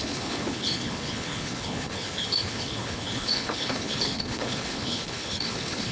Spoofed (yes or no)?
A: yes